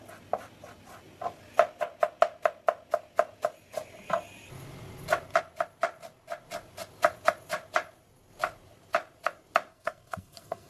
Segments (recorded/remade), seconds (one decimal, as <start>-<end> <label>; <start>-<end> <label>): 0.0-9.7 recorded; 9.7-10.7 remade